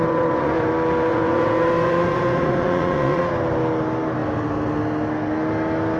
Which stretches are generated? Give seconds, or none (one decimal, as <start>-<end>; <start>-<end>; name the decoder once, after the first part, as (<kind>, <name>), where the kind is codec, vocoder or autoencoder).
0.0-0.7 (vocoder, Vocos); 1.1-3.2